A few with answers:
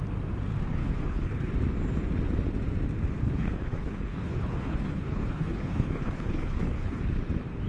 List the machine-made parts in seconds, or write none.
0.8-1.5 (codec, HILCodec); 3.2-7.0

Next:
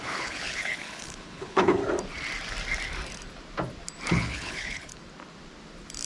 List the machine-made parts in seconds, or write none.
0.0-1.8 (codec, HILCodec); 4.1-5.0

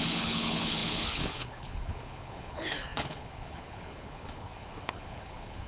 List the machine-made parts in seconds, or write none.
0.0-5.7 (codec, HILCodec)